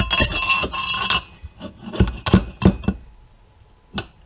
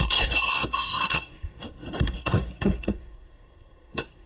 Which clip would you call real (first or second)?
first